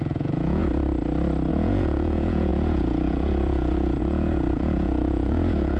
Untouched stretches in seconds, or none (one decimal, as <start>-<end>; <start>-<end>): 0.6-1.5